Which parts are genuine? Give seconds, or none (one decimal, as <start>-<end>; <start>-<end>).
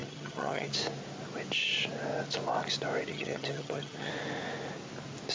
0.7-3.1; 4.1-5.3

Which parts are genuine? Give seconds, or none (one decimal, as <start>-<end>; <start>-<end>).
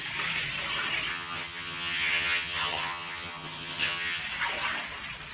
0.0-1.1; 4.2-5.3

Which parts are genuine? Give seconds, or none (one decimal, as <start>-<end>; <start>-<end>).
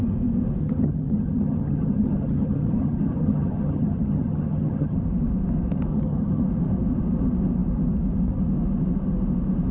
0.0-0.6; 5.0-5.9; 6.4-9.7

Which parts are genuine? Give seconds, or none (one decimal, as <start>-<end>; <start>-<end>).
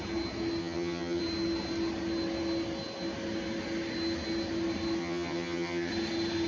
0.0-0.6; 1.2-5.0; 5.9-6.5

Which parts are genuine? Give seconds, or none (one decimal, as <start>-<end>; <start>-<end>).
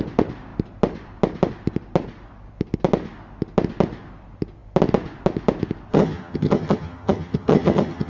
0.0-5.9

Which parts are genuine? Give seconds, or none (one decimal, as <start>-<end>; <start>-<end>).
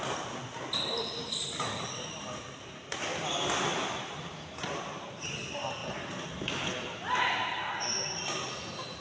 0.0-9.0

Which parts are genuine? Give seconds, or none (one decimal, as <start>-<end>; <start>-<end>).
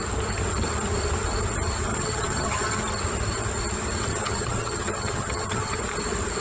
0.0-1.9; 2.8-4.1; 5.8-6.4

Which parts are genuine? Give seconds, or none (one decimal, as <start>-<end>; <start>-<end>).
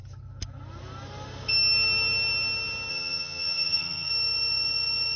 0.0-2.9; 4.1-5.2